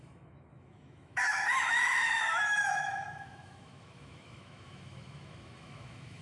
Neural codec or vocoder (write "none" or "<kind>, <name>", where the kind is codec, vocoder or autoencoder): autoencoder, DAC-VAE